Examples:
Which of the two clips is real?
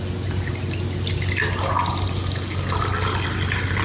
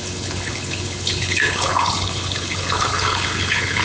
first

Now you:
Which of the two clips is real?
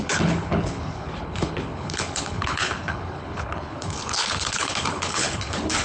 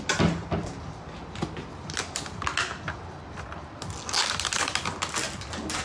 second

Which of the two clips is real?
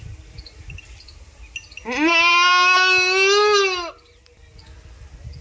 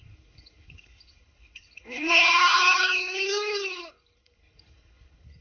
first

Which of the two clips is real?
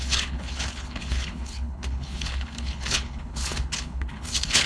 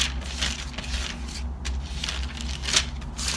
second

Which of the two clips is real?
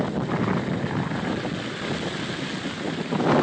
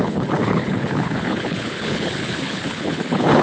first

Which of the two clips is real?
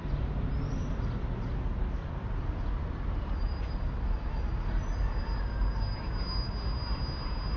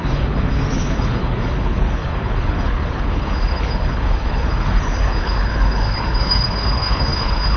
first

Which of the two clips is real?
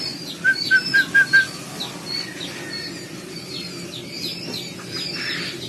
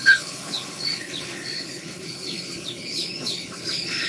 first